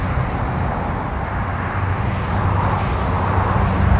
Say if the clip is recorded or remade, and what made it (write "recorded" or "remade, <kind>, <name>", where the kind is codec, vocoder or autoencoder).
recorded